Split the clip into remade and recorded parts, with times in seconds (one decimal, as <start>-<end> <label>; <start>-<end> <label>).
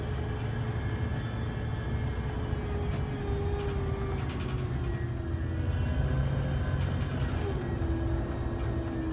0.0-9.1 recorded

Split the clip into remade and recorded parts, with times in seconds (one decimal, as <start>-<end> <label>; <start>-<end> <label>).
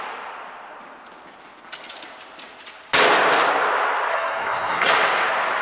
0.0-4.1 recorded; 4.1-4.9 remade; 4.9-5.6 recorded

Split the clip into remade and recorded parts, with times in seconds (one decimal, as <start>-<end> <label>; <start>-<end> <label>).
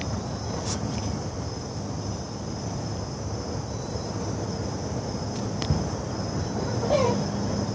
0.0-7.7 recorded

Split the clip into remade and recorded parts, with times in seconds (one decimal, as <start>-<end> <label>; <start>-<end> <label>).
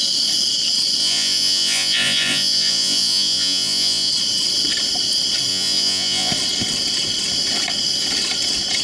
0.0-1.0 recorded; 1.0-4.1 remade; 4.1-5.5 recorded; 5.5-6.3 remade; 6.3-8.8 recorded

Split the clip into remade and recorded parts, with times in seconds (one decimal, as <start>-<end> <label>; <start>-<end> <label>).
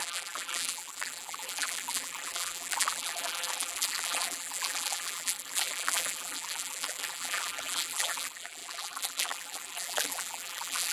0.0-10.9 remade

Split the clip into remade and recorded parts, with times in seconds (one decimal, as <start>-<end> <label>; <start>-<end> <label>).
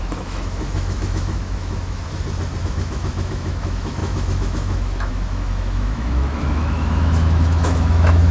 0.0-2.0 remade; 2.0-2.6 recorded; 2.6-8.3 remade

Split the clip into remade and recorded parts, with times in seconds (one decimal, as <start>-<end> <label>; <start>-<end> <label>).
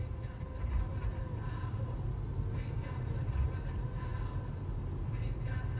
0.0-5.8 recorded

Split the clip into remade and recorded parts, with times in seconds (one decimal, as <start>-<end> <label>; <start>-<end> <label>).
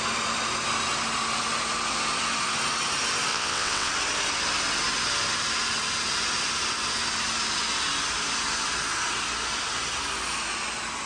0.0-3.3 recorded; 3.3-3.9 remade; 3.9-11.1 recorded